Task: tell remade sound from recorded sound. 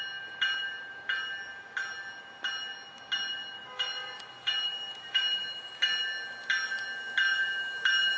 recorded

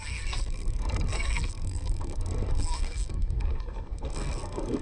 remade